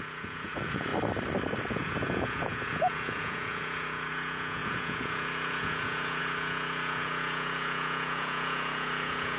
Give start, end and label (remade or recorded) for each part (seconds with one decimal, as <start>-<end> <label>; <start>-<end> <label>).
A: 0.0-0.9 remade; 0.9-1.7 recorded; 1.7-9.4 remade